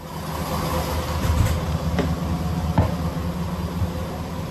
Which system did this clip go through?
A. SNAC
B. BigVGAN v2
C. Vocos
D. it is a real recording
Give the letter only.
D